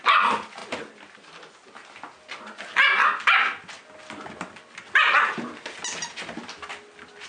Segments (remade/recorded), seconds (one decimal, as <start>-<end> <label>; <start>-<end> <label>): 0.0-7.3 recorded